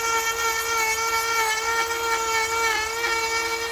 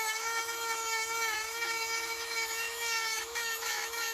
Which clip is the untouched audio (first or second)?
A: first